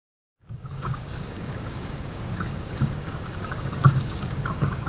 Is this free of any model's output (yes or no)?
no